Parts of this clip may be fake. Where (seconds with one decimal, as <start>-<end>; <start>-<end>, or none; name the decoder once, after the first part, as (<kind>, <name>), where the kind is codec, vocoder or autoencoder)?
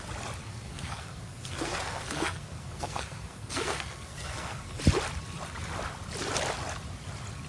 0.4-4.8 (codec, SNAC)